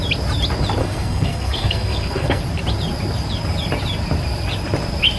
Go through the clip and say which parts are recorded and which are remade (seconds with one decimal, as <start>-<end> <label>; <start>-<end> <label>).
0.0-0.8 recorded; 0.8-2.4 remade; 2.4-5.2 recorded